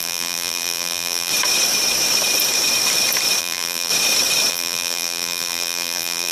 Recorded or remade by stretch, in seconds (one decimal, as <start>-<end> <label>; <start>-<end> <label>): 0.0-1.3 remade; 1.3-3.4 recorded; 3.4-3.9 remade; 3.9-4.5 recorded; 4.5-6.3 remade